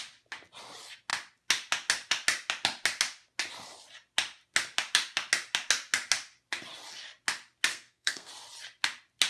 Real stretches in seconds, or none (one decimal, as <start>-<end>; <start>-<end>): 0.0-7.7; 8.3-9.3